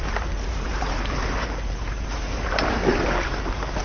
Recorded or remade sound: recorded